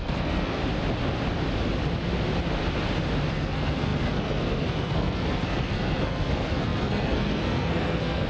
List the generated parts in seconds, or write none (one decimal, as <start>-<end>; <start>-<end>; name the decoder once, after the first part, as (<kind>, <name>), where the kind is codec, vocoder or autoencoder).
0.0-0.6 (codec, SNAC); 3.3-8.3